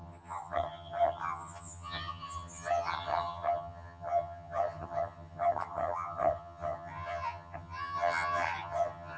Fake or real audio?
fake